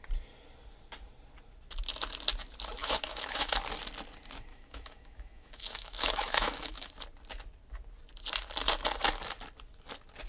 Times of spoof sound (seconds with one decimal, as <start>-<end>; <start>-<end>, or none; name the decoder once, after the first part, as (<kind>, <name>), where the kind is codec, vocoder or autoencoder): 2.8-3.6 (autoencoder, DAC-VAE); 4.5-6.9